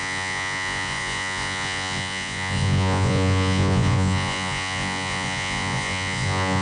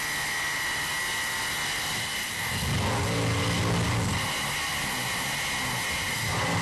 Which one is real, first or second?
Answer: second